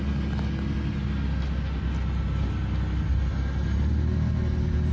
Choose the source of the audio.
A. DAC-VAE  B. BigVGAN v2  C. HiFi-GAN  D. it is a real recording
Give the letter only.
D